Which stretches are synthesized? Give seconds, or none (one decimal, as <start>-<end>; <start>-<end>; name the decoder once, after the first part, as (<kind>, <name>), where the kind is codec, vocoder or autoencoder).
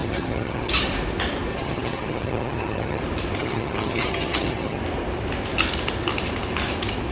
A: 0.0-0.7 (vocoder, HiFi-GAN); 1.5-3.0; 3.4-4.8